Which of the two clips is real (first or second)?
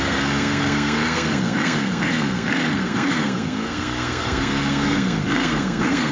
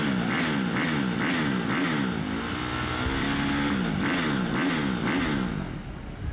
second